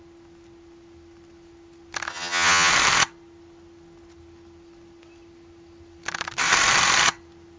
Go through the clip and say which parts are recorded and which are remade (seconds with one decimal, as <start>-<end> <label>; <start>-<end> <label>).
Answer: 0.0-2.1 recorded; 2.1-2.7 remade; 2.7-7.6 recorded